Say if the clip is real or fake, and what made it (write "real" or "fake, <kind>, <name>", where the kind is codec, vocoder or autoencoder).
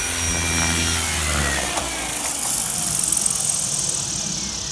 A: real